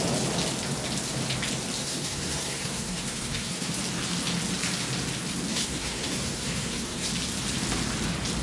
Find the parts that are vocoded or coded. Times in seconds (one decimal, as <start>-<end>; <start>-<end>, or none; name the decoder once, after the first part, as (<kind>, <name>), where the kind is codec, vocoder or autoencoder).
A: 1.8-3.7 (codec, SNAC); 5.5-7.1